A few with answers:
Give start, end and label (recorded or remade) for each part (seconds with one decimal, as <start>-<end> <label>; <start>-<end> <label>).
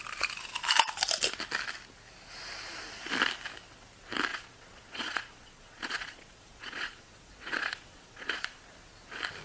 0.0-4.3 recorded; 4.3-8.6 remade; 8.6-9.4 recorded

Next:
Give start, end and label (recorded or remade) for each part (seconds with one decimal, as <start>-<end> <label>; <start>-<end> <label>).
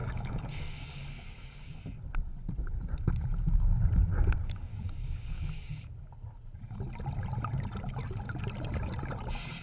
0.0-1.8 remade; 1.8-4.7 recorded; 4.7-5.9 remade; 5.9-9.6 recorded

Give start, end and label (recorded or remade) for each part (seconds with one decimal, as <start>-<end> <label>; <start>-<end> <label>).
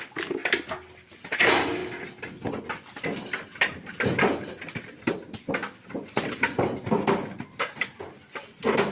0.0-8.9 recorded